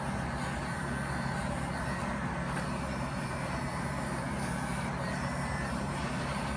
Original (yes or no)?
no